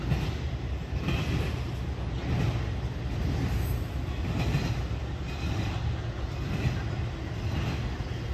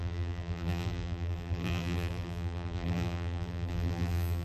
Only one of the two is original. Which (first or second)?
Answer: first